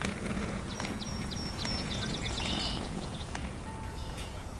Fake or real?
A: fake